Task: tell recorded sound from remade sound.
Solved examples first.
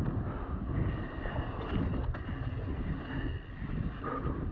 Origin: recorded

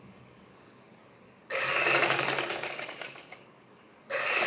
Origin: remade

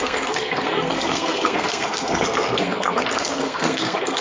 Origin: remade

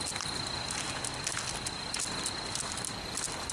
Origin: recorded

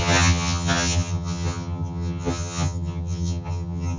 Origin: remade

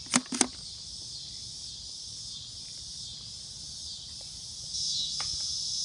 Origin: recorded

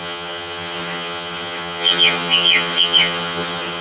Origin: remade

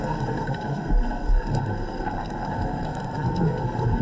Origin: remade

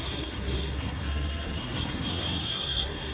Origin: remade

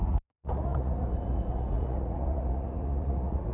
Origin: remade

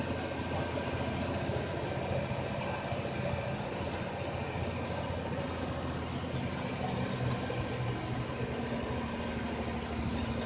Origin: recorded